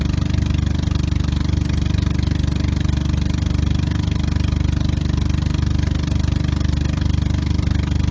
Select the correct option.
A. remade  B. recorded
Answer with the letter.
B